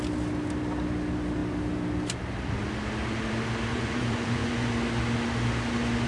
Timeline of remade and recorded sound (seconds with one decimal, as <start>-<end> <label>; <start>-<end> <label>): 0.0-3.7 recorded; 3.7-4.7 remade; 4.7-6.1 recorded